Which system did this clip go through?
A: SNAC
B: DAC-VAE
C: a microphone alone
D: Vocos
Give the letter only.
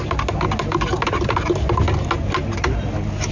C